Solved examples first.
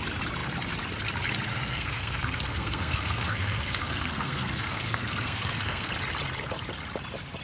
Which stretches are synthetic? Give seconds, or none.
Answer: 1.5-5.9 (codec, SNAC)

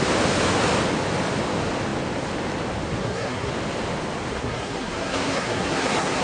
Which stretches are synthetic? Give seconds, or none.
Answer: 3.0-3.5 (codec, SNAC); 4.3-6.2

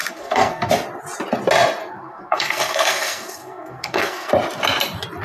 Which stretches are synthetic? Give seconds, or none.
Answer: 0.0-0.7 (codec, SNAC); 1.8-4.3